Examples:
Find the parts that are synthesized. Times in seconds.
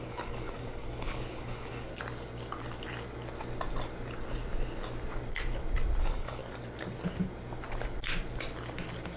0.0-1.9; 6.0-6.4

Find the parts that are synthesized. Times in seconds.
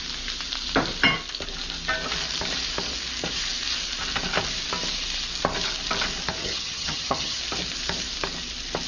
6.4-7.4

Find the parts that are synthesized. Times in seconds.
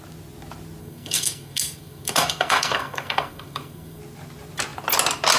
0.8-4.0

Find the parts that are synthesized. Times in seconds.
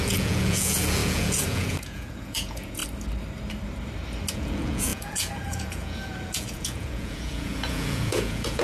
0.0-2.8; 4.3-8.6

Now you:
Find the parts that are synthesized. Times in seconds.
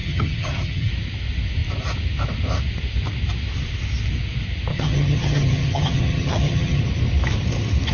0.0-0.9; 4.7-6.8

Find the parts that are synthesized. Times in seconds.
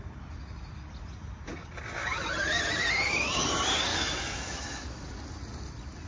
3.9-5.0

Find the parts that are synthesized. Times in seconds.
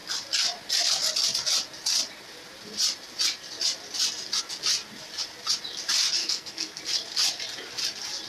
6.2-6.8